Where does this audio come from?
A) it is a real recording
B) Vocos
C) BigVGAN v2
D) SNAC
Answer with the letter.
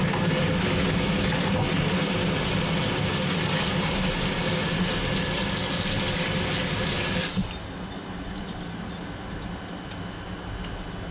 A